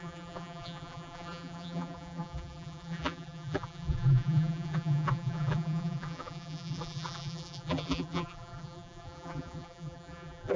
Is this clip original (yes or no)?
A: no